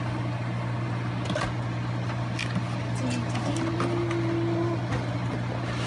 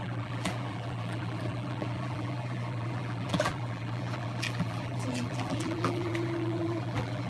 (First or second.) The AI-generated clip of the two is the second